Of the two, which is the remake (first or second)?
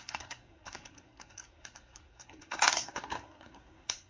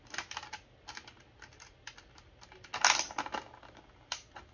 first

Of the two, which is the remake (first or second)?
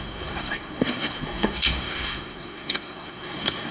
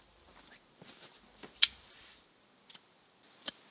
first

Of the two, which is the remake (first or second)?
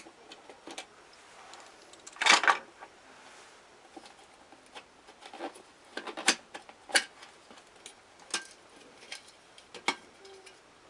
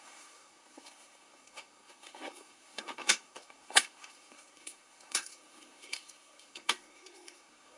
second